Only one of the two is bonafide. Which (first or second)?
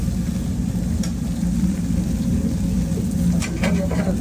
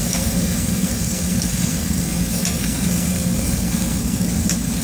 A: first